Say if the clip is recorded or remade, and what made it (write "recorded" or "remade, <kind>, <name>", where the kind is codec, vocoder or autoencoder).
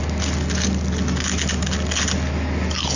recorded